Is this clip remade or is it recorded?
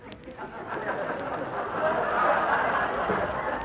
recorded